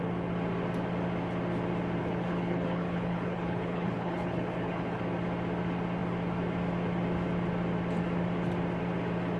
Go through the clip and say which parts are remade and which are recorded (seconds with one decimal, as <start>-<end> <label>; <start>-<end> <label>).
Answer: 0.0-2.0 recorded; 2.0-5.0 remade; 5.0-9.4 recorded